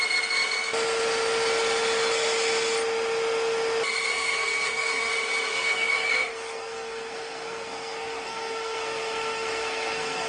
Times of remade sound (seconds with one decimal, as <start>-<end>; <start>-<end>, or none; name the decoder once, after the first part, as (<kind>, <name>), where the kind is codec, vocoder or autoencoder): 4.1-5.1 (codec, SNAC); 5.5-10.3